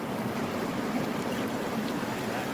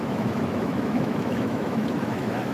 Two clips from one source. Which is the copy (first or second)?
second